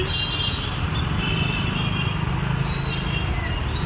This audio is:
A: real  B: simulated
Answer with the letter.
A